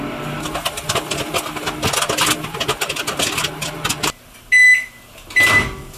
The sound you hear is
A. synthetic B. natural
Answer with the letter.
B